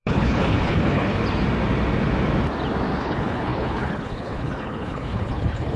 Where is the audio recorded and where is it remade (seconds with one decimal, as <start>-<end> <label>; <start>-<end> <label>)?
0.0-1.2 remade; 1.2-3.0 recorded; 3.0-5.8 remade